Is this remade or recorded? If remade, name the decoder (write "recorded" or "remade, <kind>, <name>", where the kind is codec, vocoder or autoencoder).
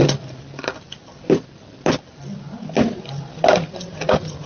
recorded